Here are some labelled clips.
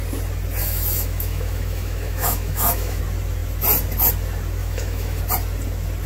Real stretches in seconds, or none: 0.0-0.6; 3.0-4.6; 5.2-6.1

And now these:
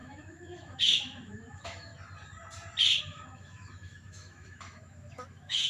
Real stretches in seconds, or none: 1.9-3.0

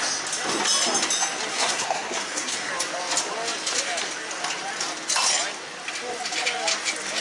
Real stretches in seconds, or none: 0.0-1.5; 2.7-7.2

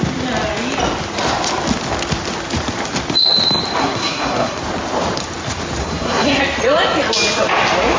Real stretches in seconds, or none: 0.0-3.8; 4.6-5.8; 6.4-8.0

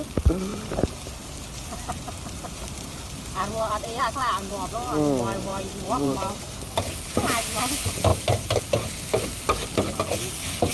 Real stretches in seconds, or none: 0.0-0.5; 4.0-5.5; 7.6-8.1; 8.6-10.7